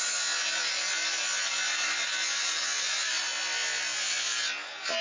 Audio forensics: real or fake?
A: real